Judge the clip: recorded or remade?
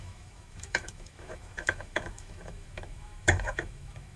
remade